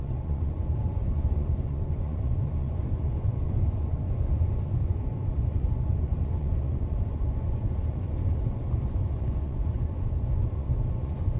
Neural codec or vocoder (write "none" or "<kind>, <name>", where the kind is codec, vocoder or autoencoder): vocoder, Vocos